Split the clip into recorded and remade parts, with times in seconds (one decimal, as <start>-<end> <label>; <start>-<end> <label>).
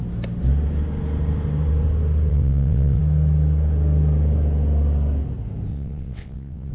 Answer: 0.0-2.3 recorded; 2.3-3.0 remade; 3.0-5.7 recorded; 5.7-6.7 remade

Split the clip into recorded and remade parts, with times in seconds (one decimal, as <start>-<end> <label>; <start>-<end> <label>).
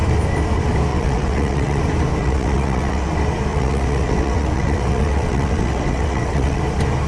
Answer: 0.0-0.9 recorded; 0.9-1.8 remade; 1.8-2.2 recorded; 2.2-3.1 remade; 3.1-3.5 recorded; 3.5-6.6 remade; 6.6-7.1 recorded